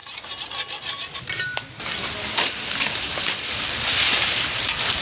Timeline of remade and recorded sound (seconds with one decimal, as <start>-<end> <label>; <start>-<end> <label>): 0.0-5.0 recorded

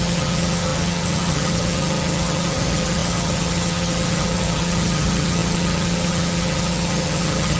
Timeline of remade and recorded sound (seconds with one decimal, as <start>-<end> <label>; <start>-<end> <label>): 0.0-7.6 remade

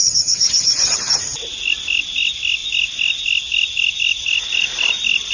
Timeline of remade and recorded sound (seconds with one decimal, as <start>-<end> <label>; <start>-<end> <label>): 0.0-1.2 remade; 1.2-5.3 recorded